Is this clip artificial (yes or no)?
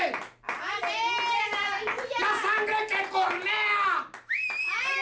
no